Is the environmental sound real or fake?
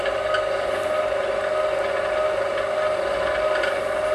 real